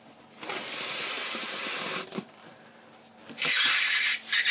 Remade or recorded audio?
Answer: recorded